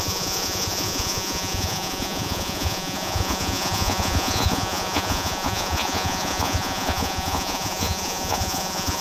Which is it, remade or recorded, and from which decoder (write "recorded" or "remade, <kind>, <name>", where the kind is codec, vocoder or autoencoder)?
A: remade, vocoder, Vocos